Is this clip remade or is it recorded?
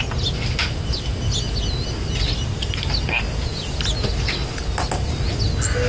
recorded